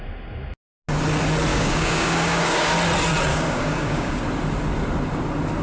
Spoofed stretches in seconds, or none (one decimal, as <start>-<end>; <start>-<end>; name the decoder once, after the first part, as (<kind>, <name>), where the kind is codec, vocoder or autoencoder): 1.5-2.7 (codec, DAC); 3.3-4.2